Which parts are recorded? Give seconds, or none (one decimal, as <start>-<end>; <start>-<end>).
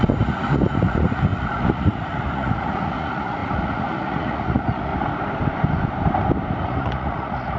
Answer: 4.9-6.6